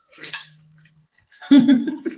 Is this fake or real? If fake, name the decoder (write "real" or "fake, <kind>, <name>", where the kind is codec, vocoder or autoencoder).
fake, codec, SNAC